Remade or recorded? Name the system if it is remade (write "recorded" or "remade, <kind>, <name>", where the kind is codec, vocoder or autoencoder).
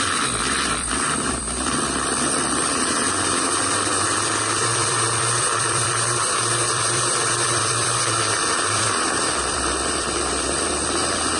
remade, vocoder, BigVGAN v2